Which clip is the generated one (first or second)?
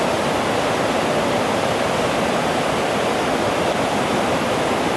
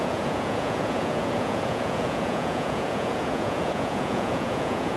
second